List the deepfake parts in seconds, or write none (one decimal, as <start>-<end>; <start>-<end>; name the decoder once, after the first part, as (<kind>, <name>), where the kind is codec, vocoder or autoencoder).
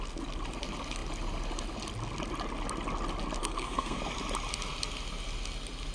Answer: 3.4-4.0 (codec, SNAC)